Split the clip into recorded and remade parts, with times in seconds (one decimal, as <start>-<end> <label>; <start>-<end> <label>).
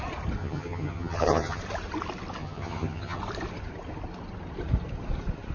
0.0-0.4 recorded; 0.4-1.6 remade; 1.6-2.4 recorded; 2.4-3.2 remade; 3.2-5.5 recorded